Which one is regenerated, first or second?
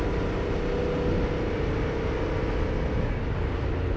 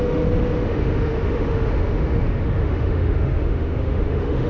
second